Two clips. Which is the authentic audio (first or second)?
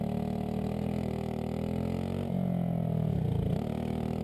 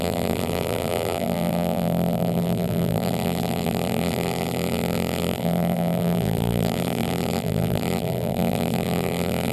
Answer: first